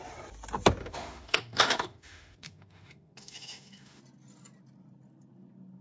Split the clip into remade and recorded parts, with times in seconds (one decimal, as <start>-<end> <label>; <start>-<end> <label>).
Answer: 0.0-0.8 recorded; 0.8-4.0 remade; 4.0-5.8 recorded